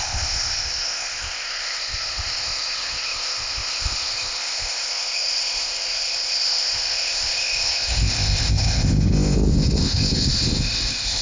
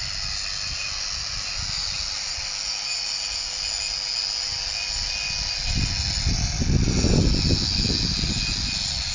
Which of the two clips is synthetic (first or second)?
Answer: first